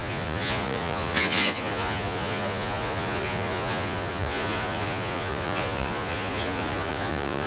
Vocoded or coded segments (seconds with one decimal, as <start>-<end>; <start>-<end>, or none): 0.0-7.5

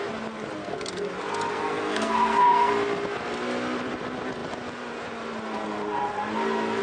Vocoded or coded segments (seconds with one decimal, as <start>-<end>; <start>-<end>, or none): 0.6-1.1; 1.5-2.7

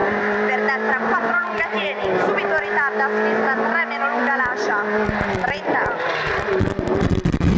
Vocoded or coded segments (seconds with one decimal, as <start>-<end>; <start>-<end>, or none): none